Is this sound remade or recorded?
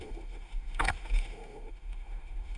remade